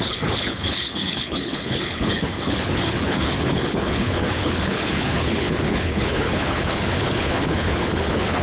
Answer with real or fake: fake